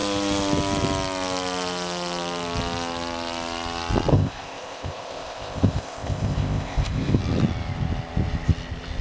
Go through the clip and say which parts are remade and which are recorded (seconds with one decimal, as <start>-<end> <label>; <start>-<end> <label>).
0.0-4.1 recorded; 4.1-7.2 remade; 7.2-9.0 recorded